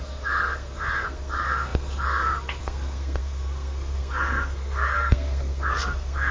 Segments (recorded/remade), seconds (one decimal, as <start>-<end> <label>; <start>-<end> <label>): 0.0-6.3 remade